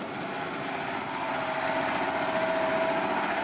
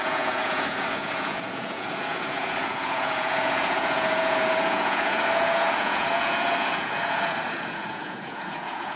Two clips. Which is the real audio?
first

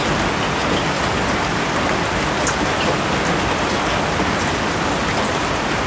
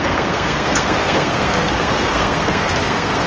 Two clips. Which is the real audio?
first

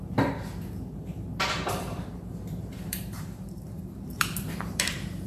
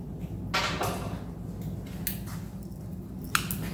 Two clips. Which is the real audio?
second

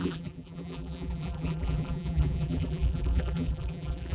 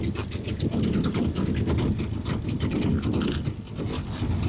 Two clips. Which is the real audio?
second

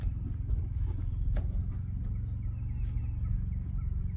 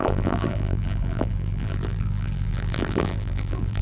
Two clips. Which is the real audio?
first